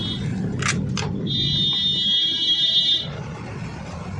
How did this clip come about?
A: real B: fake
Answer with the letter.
A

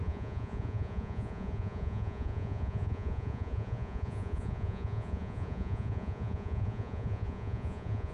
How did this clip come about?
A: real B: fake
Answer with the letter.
B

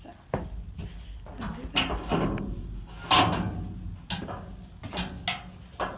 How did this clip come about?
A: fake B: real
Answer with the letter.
B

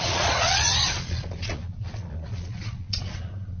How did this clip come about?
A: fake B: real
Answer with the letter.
A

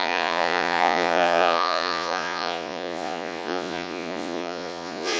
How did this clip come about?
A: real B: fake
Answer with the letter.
B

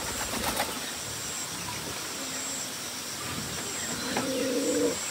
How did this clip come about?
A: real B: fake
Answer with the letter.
A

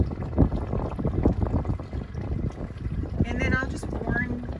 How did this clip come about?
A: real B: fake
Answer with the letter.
A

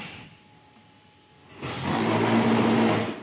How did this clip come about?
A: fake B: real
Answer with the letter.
B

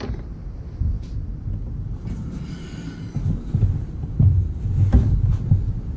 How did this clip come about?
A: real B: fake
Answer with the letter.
A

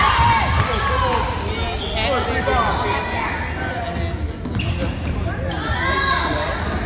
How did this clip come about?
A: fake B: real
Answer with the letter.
B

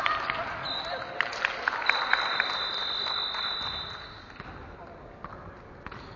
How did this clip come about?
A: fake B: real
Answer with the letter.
B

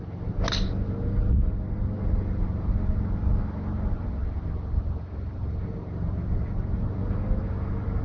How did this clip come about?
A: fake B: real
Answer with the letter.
B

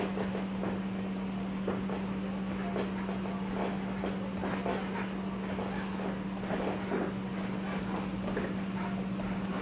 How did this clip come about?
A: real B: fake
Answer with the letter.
A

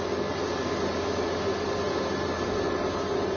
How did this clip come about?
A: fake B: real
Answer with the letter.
B